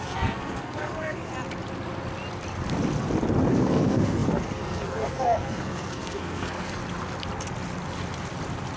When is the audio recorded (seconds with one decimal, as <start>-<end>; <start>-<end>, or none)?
1.3-3.5; 6.8-8.8